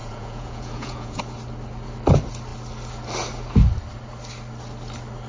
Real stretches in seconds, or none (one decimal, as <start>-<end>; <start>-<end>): 1.2-5.3